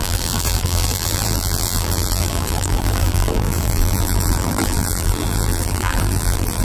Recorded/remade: remade